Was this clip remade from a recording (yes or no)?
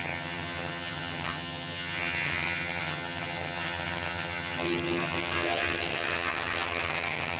yes